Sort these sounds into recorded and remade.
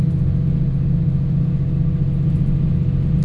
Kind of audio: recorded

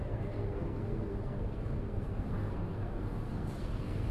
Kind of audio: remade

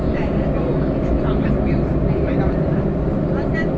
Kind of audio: recorded